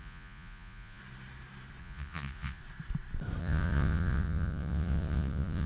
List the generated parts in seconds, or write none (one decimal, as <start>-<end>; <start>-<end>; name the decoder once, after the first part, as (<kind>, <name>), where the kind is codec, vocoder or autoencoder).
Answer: 0.0-1.0 (vocoder, Vocos); 1.8-2.6; 3.4-5.7